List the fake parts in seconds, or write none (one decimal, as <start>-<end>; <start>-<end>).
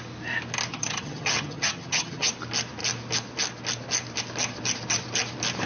0.7-2.3